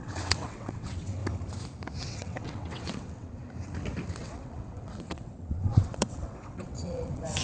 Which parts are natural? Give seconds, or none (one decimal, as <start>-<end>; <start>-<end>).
1.2-2.0; 3.4-4.2